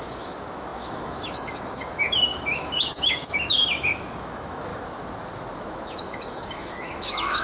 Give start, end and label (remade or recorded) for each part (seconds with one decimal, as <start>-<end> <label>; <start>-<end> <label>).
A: 0.0-4.7 remade; 4.7-5.6 recorded; 5.6-7.4 remade